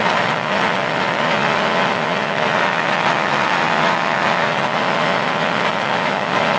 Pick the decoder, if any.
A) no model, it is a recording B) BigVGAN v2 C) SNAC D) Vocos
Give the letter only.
D